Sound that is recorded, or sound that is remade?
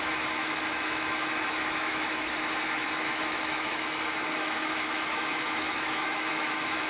remade